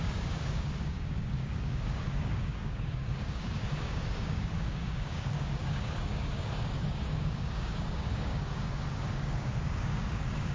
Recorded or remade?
remade